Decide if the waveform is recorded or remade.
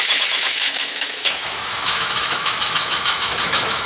remade